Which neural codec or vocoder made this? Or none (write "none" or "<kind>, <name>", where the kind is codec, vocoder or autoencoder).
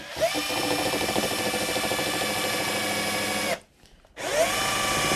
none